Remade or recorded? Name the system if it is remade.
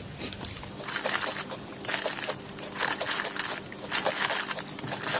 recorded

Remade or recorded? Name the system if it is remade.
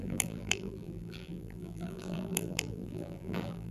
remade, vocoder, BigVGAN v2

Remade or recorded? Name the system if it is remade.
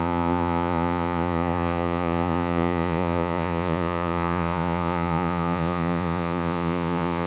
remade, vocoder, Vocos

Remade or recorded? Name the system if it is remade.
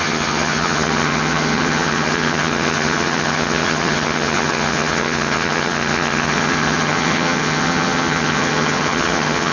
remade, vocoder, HiFi-GAN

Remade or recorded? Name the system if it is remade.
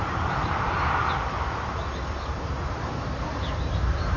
remade, vocoder, BigVGAN v2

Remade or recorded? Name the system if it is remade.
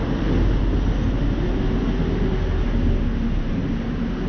recorded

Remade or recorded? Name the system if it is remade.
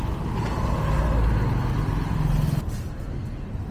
recorded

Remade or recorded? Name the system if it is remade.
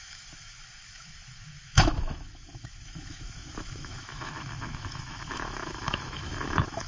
remade, autoencoder, DAC-VAE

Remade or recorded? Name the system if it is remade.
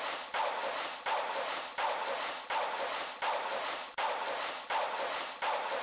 recorded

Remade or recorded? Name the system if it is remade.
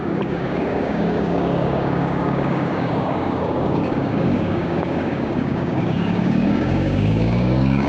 remade, codec, DAC